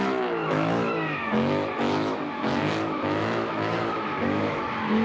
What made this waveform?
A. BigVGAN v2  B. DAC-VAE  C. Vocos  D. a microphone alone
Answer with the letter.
B